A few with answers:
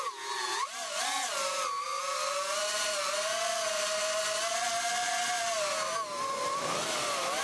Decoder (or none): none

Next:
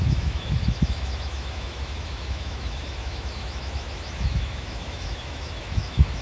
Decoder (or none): autoencoder, DAC-VAE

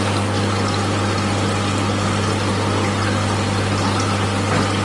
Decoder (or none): none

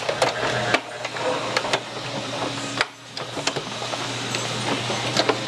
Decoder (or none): none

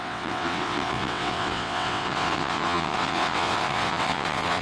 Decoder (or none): vocoder, WaveNeXt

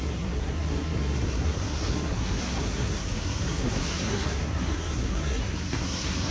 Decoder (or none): codec, SNAC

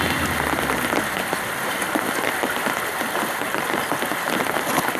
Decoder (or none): none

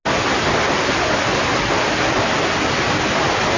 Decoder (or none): none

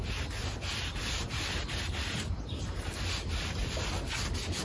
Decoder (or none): none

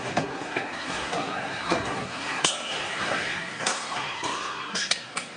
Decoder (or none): codec, SNAC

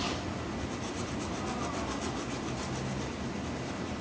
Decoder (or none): none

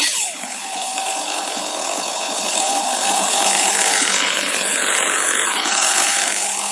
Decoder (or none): codec, HILCodec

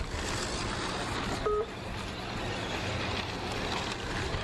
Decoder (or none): none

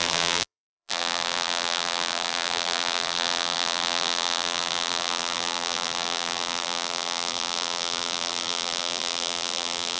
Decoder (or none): vocoder, BigVGAN v2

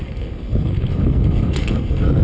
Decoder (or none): codec, SNAC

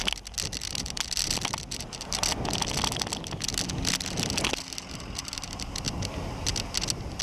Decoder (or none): none